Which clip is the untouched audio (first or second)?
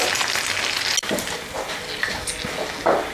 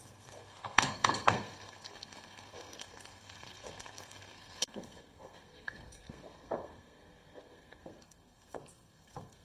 first